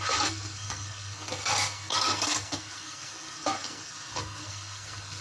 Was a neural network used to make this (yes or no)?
yes